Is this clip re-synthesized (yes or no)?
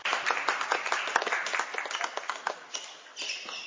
no